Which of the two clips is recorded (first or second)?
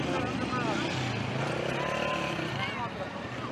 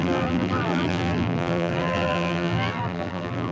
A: first